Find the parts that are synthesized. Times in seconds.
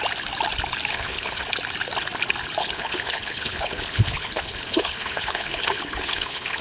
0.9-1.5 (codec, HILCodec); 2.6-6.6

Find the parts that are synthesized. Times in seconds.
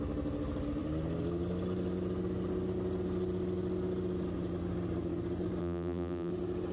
5.6-6.3 (vocoder, BigVGAN v2)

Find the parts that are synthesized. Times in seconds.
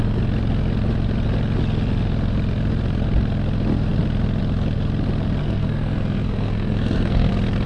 5.4-7.3 (codec, SNAC)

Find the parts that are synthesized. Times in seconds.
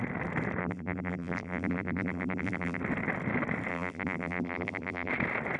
0.6-2.8 (vocoder, BigVGAN v2); 3.7-5.1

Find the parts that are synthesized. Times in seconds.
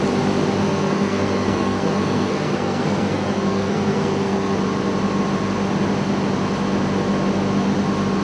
0.6-4.6 (codec, SNAC)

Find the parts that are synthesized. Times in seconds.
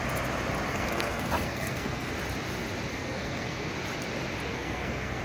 0.7-2.1 (codec, SNAC); 2.9-3.7; 4.5-5.2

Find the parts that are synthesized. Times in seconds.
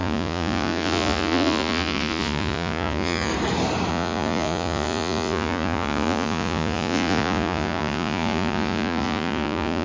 0.0-3.3 (vocoder, Vocos); 3.9-9.8